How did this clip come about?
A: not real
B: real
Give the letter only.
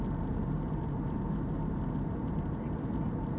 B